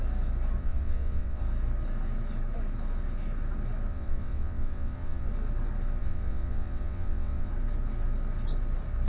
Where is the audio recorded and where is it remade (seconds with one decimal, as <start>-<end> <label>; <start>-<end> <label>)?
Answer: 0.0-0.6 recorded; 0.6-1.4 remade; 1.4-3.9 recorded; 3.9-5.3 remade; 5.3-6.0 recorded; 6.0-7.5 remade; 7.5-9.1 recorded